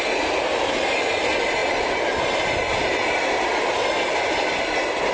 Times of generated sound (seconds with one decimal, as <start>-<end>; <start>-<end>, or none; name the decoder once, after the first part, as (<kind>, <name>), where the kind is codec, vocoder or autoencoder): none